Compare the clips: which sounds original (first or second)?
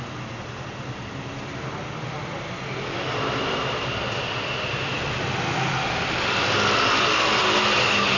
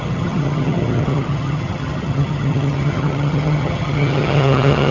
first